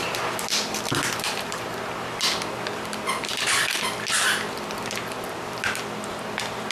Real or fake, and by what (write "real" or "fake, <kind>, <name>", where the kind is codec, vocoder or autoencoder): real